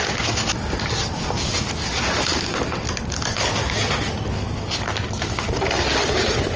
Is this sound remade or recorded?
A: recorded